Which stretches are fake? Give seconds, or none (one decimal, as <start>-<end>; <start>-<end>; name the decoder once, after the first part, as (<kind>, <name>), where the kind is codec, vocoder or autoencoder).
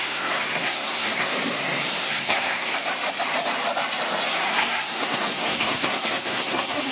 0.0-1.3 (codec, SNAC); 2.0-2.7; 4.3-6.9